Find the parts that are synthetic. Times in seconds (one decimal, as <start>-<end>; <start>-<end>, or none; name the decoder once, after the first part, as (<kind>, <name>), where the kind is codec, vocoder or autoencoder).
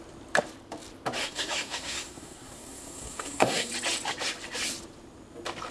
1.2-3.7 (codec, SNAC)